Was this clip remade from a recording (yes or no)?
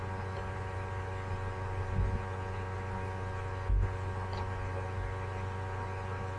no